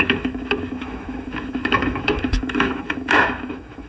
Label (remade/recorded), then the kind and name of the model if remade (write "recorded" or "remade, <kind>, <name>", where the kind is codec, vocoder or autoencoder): remade, autoencoder, DAC-VAE